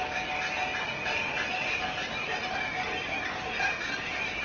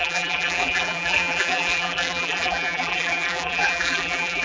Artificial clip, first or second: second